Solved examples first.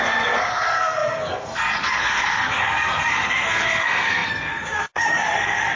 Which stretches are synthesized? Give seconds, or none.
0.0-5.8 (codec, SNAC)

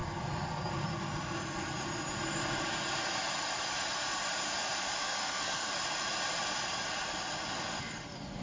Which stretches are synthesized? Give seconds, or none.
5.0-5.7 (codec, SNAC)

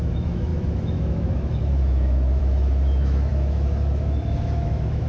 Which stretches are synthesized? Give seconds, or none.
0.0-5.1 (autoencoder, DAC-VAE)

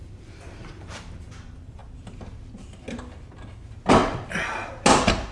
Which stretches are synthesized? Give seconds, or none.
0.0-1.8 (vocoder, BigVGAN v2)

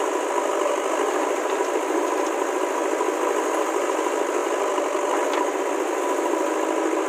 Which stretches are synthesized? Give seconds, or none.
none

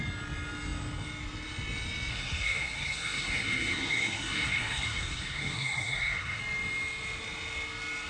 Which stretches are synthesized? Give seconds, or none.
2.1-6.4 (codec, SNAC)

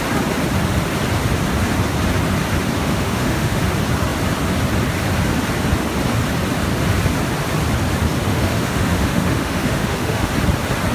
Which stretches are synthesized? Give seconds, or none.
2.8-3.6 (autoencoder, DAC-VAE); 8.3-10.3